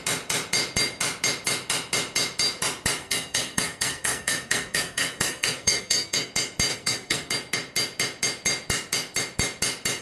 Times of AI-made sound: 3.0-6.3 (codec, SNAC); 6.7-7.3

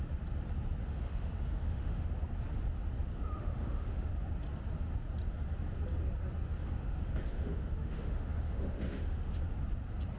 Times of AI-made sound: 0.8-2.1 (autoencoder, DAC-VAE); 3.1-4.1; 6.6-9.4

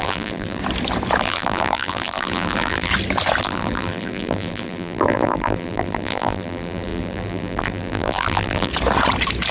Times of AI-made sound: 0.0-0.6 (vocoder, BigVGAN v2); 1.2-2.9; 3.4-8.7

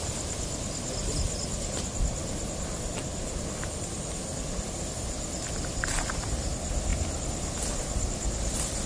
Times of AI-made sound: none

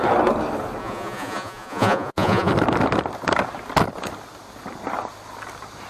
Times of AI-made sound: 0.8-2.5 (vocoder, Vocos)

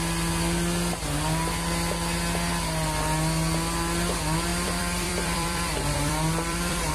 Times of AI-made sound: 4.5-6.9 (vocoder, BigVGAN v2)

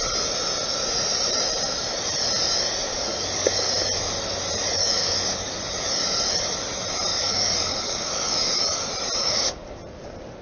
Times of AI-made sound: 2.9-3.7 (codec, DAC); 4.8-5.6; 7.1-8.5; 9.2-9.8

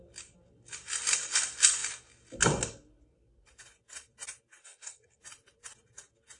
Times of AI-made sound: 4.6-5.2 (codec, SNAC)